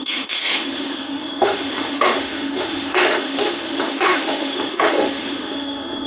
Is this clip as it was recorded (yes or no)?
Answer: no